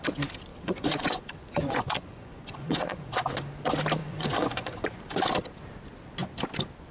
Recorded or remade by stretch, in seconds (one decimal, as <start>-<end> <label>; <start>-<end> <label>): 0.0-0.5 recorded; 0.5-3.2 remade; 3.2-4.0 recorded; 4.0-5.0 remade; 5.0-6.9 recorded